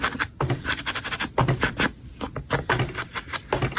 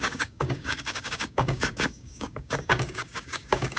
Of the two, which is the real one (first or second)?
first